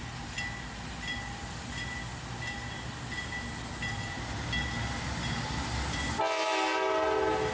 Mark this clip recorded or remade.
recorded